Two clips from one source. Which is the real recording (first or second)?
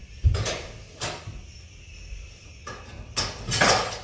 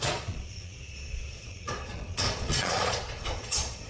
first